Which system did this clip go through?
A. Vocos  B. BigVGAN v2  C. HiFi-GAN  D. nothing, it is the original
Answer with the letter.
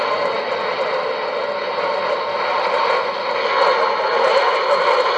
D